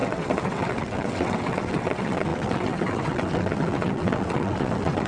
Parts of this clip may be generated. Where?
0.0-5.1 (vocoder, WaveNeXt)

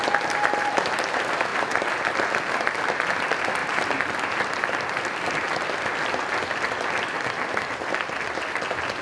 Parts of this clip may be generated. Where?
3.6-8.5 (vocoder, BigVGAN v2)

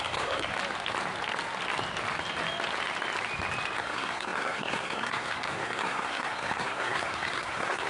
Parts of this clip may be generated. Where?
0.0-0.5 (codec, SNAC); 3.8-7.9

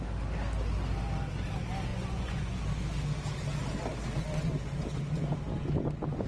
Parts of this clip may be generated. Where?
1.9-2.6 (vocoder, Vocos)

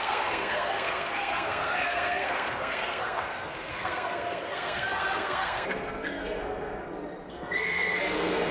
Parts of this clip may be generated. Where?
0.0-6.8 (codec, SNAC); 7.3-8.5

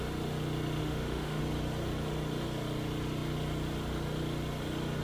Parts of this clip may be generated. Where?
0.8-1.4 (autoencoder, DAC-VAE)

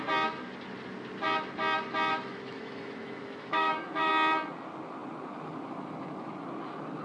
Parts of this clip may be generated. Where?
2.1-4.1 (autoencoder, DAC-VAE)